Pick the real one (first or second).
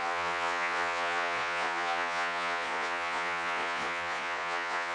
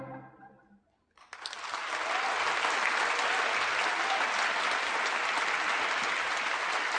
second